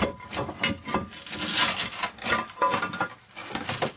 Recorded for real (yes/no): yes